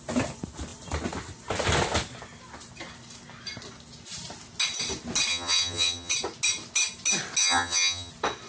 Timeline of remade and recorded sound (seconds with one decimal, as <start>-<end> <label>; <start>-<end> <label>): 0.0-5.3 recorded; 5.3-6.1 remade; 6.1-7.4 recorded; 7.4-8.1 remade; 8.1-8.5 recorded